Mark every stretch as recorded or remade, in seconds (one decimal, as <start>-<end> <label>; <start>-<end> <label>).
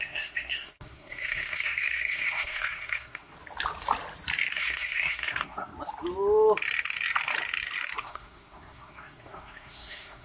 0.0-3.3 remade; 3.3-4.5 recorded; 4.5-5.7 remade; 5.7-8.0 recorded; 8.0-10.2 remade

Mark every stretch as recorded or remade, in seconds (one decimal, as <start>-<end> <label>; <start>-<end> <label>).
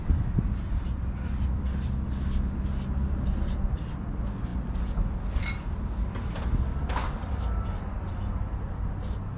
0.0-9.4 recorded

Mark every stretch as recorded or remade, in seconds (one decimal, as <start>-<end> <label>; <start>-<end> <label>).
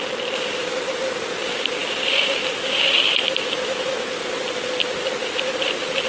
0.0-6.1 recorded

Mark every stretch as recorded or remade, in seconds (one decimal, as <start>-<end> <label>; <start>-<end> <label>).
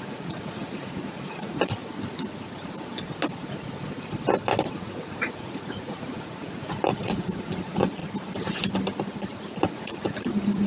0.0-1.8 remade; 1.8-4.7 recorded; 4.7-8.0 remade; 8.0-9.6 recorded; 9.6-10.7 remade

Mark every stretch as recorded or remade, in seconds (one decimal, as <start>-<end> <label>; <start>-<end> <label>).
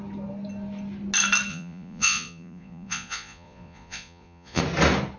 0.0-1.5 recorded; 1.5-4.6 remade; 4.6-5.2 recorded